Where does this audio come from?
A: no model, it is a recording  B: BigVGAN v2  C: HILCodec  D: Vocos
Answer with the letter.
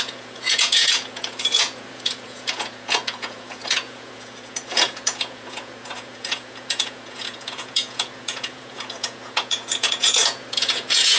D